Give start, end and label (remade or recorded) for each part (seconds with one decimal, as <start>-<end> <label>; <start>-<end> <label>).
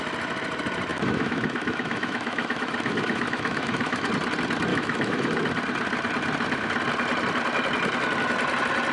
0.0-0.9 recorded; 0.9-4.1 remade; 4.1-4.7 recorded; 4.7-5.4 remade; 5.4-8.9 recorded